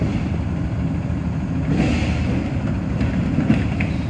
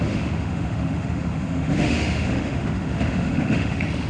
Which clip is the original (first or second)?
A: first